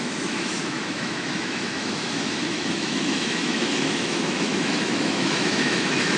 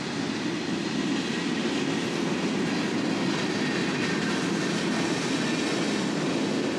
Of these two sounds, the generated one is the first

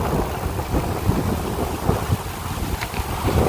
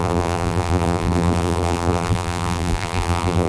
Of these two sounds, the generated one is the second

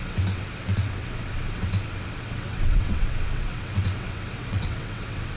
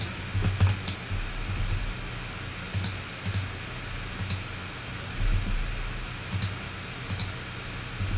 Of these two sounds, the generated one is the first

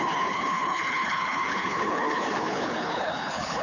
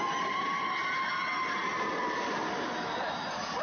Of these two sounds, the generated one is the first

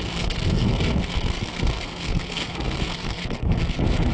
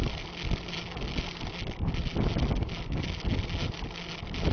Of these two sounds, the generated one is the first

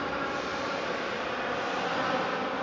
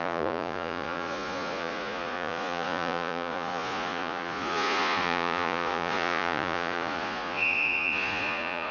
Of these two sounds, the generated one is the second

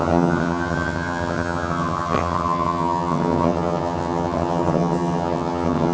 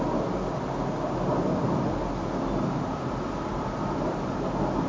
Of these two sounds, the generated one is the first